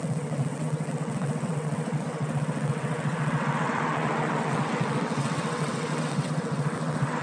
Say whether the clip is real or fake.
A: fake